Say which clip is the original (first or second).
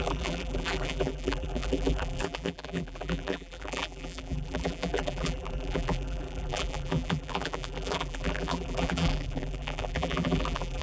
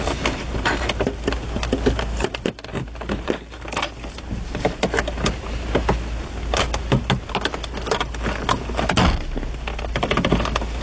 second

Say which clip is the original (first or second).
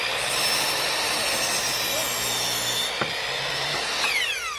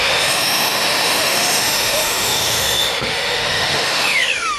first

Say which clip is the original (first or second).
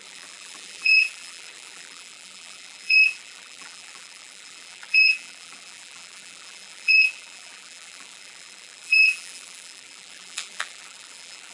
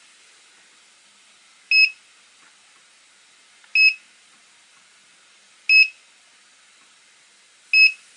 second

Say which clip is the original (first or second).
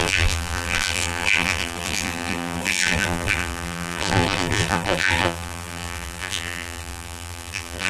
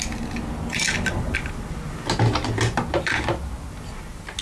second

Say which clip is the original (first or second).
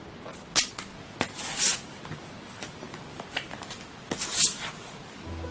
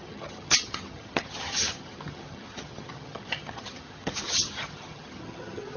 first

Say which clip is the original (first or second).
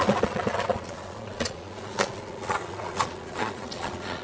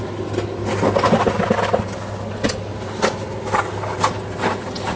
second